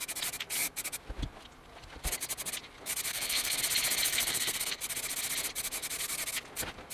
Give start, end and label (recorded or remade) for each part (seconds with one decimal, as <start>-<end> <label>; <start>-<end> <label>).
0.0-3.1 recorded; 3.1-3.6 remade; 3.6-4.1 recorded; 4.1-4.8 remade; 4.8-6.9 recorded